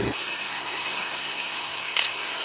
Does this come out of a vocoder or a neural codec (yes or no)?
yes